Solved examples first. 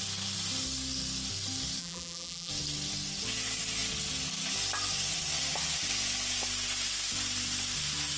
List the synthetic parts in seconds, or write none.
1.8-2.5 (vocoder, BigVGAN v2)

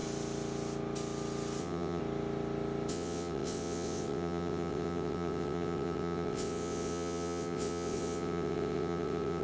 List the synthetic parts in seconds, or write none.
1.6-2.0 (vocoder, WaveNeXt); 2.9-9.4

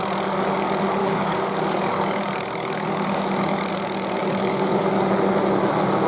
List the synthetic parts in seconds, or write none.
1.0-3.7 (codec, DAC); 4.2-5.1

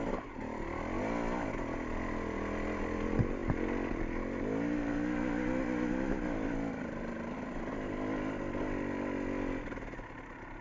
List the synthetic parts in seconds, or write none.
none

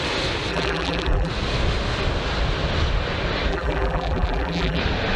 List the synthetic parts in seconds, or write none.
0.5-1.3 (vocoder, BigVGAN v2); 3.5-4.8